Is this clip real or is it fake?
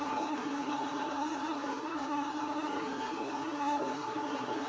fake